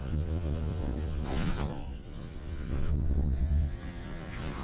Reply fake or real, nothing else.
fake